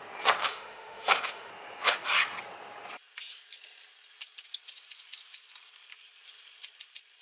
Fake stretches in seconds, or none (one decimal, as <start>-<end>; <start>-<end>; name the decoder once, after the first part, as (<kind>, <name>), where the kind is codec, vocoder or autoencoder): 0.4-1.5 (autoencoder, DAC-VAE)